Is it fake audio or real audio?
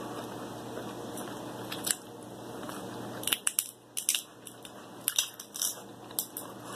real